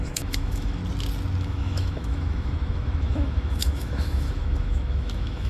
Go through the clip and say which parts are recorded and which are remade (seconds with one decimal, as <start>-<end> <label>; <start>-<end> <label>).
0.0-0.8 remade; 0.8-1.4 recorded; 1.4-5.5 remade